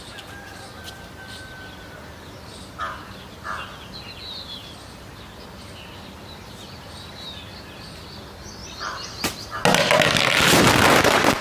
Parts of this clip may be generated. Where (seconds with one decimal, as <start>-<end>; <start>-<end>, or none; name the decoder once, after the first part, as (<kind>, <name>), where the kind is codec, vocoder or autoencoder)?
8.6-9.4 (vocoder, BigVGAN v2)

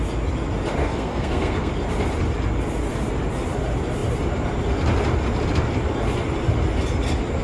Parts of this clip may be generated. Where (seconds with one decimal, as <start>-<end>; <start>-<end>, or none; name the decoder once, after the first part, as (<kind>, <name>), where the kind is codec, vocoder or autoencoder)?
0.8-1.7 (codec, SNAC)

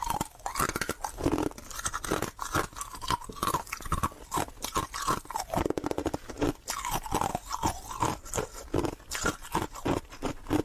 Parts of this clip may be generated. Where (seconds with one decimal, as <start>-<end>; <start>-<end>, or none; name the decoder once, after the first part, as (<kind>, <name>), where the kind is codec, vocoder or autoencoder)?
none

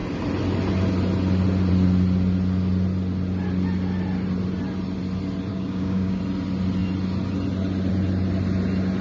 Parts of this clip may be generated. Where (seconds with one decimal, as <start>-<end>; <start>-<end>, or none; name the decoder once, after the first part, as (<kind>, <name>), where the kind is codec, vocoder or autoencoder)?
5.5-6.2 (codec, DAC)

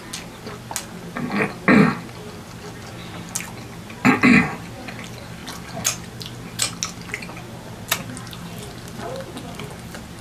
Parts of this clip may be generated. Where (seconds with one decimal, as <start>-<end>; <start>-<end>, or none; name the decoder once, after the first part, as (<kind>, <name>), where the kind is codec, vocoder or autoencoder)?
none

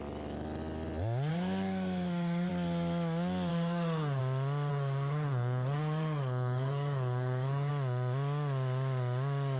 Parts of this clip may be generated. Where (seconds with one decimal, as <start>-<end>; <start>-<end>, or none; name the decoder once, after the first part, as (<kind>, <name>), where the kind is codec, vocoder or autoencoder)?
1.3-2.5 (codec, SNAC); 3.5-4.2; 4.7-7.7

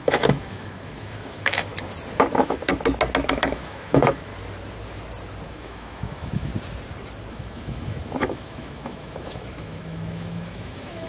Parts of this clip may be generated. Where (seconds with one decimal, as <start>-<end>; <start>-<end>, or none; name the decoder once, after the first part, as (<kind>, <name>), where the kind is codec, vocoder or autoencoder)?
0.0-1.7 (autoencoder, DAC-VAE); 2.3-2.7; 3.3-4.3; 5.5-6.5; 7.3-11.1

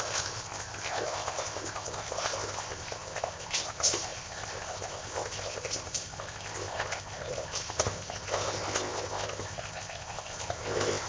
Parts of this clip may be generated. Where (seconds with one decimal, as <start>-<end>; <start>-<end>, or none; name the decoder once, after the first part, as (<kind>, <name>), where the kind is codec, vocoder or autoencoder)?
0.0-11.1 (codec, ZipCodec)